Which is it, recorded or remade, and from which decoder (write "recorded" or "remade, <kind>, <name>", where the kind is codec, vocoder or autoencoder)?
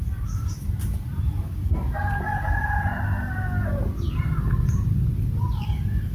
recorded